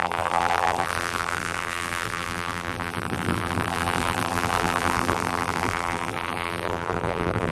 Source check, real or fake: fake